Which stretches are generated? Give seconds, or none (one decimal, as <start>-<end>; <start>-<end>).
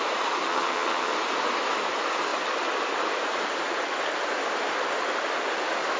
0.5-1.1